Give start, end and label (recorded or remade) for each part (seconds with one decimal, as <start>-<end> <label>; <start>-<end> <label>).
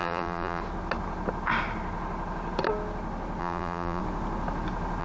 0.0-0.6 remade; 0.6-3.4 recorded; 3.4-4.0 remade; 4.0-5.0 recorded